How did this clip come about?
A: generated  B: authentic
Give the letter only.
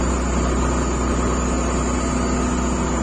B